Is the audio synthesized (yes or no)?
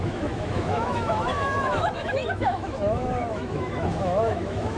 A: yes